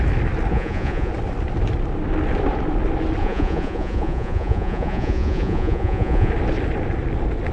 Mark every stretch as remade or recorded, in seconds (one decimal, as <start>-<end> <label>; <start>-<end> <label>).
0.0-0.5 recorded; 0.5-1.1 remade; 1.1-3.2 recorded; 3.2-6.3 remade; 6.3-7.5 recorded